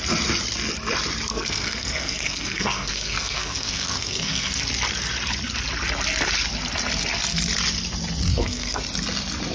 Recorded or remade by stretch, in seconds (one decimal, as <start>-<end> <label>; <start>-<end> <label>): 0.0-1.3 recorded; 1.3-4.5 remade; 4.5-8.3 recorded; 8.3-8.8 remade; 8.8-9.5 recorded